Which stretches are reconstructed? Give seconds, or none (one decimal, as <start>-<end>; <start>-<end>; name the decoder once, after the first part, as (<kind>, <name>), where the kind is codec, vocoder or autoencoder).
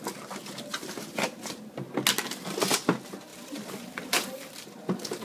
3.3-4.5 (vocoder, BigVGAN v2)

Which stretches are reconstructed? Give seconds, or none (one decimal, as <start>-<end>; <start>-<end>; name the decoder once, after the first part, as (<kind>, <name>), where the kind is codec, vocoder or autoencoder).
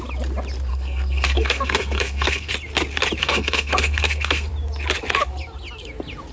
0.7-2.5 (codec, SNAC); 3.2-4.5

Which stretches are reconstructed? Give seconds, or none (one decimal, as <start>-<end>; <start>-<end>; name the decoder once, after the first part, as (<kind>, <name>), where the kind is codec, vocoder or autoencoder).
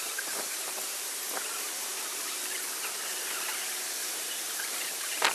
0.0-5.3 (vocoder, BigVGAN v2)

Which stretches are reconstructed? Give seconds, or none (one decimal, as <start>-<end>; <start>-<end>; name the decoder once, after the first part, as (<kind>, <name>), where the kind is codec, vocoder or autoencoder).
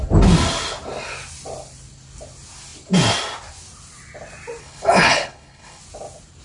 4.6-5.8 (codec, HILCodec)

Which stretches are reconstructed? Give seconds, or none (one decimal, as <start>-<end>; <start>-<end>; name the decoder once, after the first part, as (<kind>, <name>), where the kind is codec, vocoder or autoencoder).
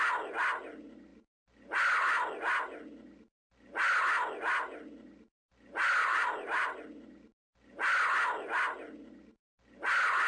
6.0-6.8 (vocoder, BigVGAN v2)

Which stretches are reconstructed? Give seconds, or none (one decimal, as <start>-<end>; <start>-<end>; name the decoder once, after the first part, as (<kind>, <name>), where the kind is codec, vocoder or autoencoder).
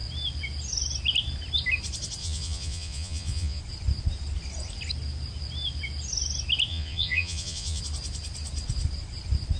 2.2-3.6 (vocoder, Vocos); 6.7-7.8